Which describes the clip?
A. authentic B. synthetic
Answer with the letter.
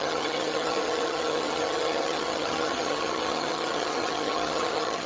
B